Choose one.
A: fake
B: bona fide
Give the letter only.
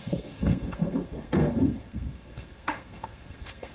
A